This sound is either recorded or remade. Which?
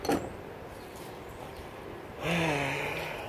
recorded